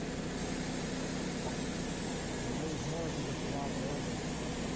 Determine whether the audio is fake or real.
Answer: real